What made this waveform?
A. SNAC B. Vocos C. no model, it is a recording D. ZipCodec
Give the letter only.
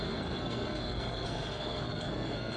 A